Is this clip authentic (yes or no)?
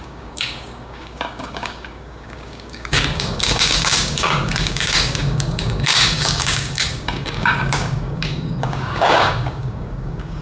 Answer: no